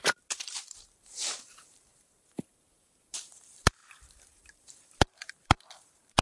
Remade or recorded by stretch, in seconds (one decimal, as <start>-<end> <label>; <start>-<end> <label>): 0.0-6.2 remade